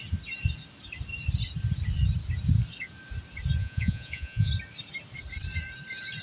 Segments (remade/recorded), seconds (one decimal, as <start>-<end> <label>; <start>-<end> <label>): 0.0-3.6 recorded; 3.6-4.5 remade; 4.5-6.2 recorded